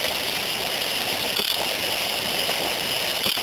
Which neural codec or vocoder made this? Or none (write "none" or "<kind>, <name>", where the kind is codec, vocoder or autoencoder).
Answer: vocoder, BigVGAN v2